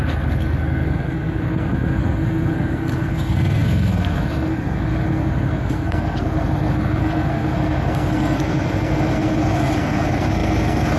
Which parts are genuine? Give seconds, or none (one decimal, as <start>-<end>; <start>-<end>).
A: none

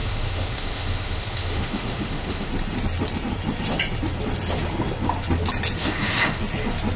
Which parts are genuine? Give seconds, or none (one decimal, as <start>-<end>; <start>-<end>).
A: 2.5-5.8; 6.4-7.0

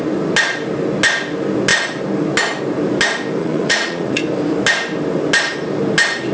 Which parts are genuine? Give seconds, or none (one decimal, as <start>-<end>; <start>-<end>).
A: 0.0-3.4; 4.2-6.3

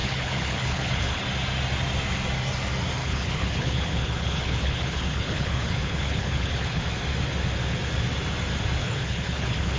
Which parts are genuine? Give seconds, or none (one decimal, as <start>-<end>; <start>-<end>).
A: 1.2-3.0; 6.8-8.8

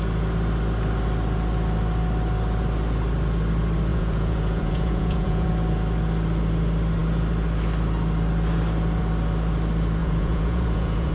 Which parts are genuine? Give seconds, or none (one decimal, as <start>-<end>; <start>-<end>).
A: 0.0-3.9; 5.5-10.0